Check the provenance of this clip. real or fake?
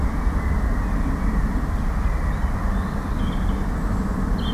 real